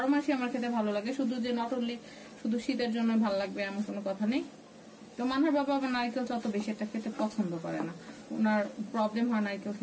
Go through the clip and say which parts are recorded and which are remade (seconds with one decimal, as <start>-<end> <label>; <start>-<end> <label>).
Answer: 0.0-9.8 recorded